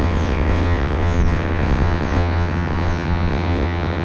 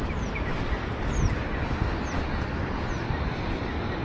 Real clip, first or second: second